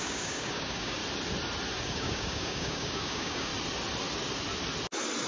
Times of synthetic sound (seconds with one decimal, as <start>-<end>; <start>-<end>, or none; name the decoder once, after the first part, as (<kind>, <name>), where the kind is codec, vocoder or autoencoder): 0.0-1.0 (codec, DAC); 1.8-3.5